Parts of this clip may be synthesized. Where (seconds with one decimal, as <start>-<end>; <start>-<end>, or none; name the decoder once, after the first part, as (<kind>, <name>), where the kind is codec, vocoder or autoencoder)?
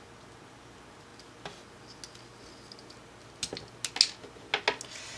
none